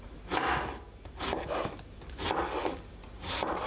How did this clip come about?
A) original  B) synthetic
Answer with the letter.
A